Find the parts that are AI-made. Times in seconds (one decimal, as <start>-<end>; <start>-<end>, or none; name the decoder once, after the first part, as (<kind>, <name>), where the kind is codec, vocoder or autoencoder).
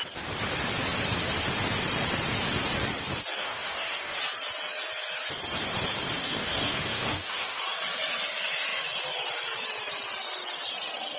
3.4-4.2 (codec, DAC); 6.2-7.6